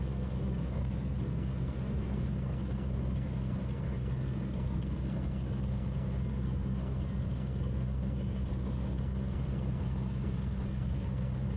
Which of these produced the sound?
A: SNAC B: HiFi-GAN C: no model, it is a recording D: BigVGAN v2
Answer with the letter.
A